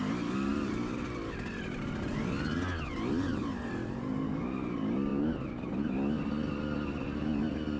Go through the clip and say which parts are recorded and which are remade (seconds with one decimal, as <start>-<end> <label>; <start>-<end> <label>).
0.0-7.8 recorded